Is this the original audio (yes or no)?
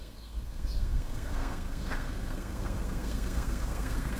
no